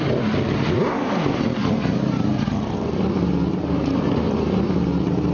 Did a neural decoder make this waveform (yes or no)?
no